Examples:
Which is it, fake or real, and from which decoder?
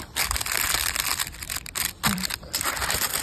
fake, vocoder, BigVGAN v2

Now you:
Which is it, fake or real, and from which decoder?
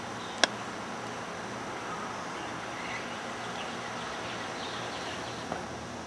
real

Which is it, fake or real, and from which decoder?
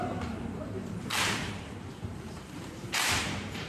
fake, vocoder, BigVGAN v2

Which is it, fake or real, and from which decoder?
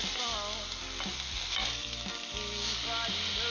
real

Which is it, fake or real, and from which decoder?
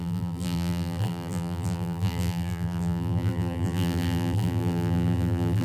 fake, vocoder, BigVGAN v2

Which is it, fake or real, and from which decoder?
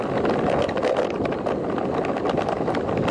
real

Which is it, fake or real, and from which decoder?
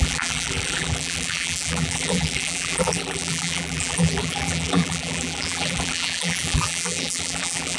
fake, vocoder, BigVGAN v2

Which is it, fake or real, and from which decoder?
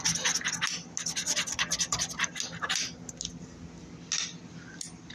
real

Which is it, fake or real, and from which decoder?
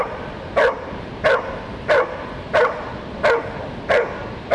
real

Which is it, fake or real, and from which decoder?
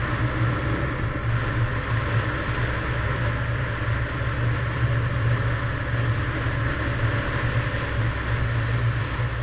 real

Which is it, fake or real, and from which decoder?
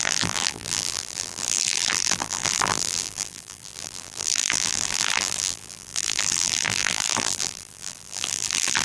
fake, vocoder, BigVGAN v2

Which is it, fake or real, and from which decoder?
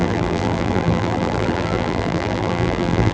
fake, vocoder, BigVGAN v2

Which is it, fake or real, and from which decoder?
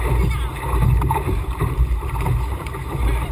fake, vocoder, BigVGAN v2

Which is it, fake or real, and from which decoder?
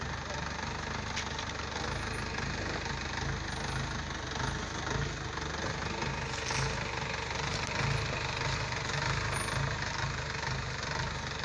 real